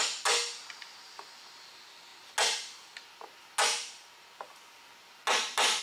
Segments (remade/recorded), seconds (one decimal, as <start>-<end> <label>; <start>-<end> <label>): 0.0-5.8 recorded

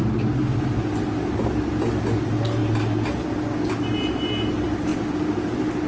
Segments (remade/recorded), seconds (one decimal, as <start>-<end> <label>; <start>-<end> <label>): 0.0-5.9 recorded

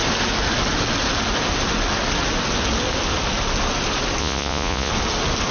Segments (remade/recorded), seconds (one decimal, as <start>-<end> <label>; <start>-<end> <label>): 0.0-4.2 recorded; 4.2-4.9 remade; 4.9-5.5 recorded

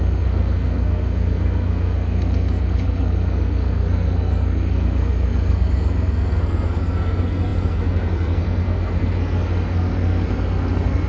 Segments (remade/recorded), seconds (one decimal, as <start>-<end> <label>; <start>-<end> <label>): 0.0-11.1 remade

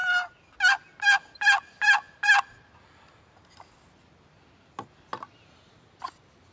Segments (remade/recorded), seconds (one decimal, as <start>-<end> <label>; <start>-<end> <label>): 0.0-6.5 recorded

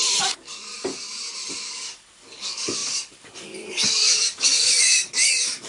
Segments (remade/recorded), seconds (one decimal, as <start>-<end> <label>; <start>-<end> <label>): 0.0-0.7 remade; 0.7-1.5 recorded; 1.5-5.7 remade

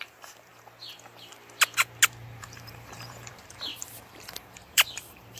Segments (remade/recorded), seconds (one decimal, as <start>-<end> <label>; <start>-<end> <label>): 0.0-0.5 remade; 0.5-2.4 recorded; 2.4-3.7 remade; 3.7-4.4 recorded; 4.4-5.4 remade

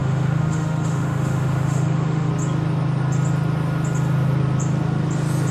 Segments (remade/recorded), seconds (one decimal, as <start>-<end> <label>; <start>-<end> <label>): 0.0-2.3 remade; 2.3-5.5 recorded